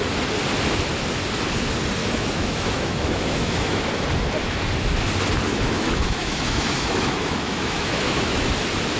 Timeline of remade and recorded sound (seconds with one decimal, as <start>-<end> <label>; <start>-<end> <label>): 0.0-2.0 recorded; 2.0-3.9 remade; 3.9-5.5 recorded; 5.5-8.5 remade; 8.5-9.0 recorded